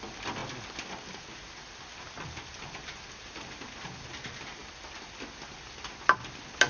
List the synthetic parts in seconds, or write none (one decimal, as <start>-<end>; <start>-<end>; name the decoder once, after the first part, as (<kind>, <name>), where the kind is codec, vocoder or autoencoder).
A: none